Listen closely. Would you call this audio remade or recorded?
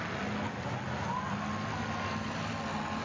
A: recorded